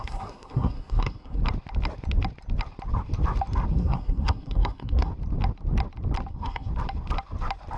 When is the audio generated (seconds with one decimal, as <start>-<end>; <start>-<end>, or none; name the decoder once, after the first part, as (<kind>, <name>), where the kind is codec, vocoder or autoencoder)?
0.0-1.4 (codec, SNAC); 3.7-5.1; 6.3-6.7